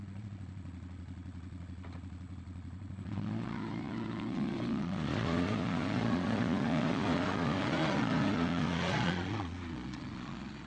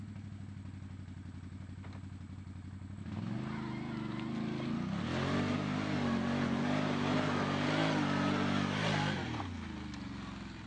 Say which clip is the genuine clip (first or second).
second